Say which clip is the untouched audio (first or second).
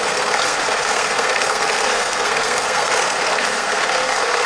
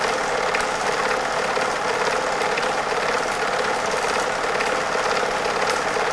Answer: second